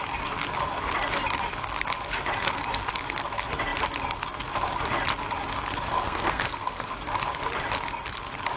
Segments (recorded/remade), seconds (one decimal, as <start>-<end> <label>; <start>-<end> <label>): 0.0-5.9 recorded; 5.9-6.9 remade; 6.9-8.6 recorded